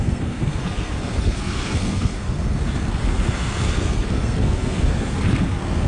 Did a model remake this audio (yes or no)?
yes